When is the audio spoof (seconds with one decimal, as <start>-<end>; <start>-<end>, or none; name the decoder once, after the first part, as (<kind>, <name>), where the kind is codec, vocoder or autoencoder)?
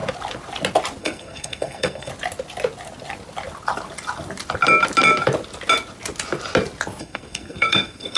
1.0-2.1 (codec, SNAC); 7.0-8.2